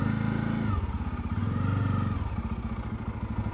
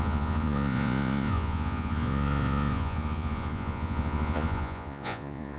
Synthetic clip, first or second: second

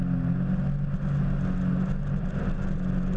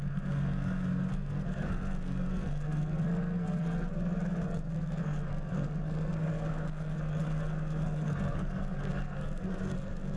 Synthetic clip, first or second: second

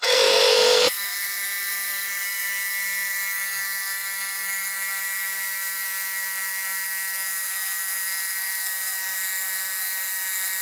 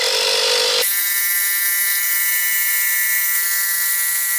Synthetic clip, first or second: first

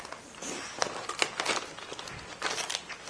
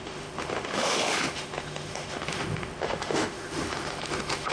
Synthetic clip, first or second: second